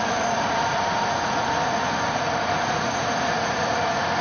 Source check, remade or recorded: remade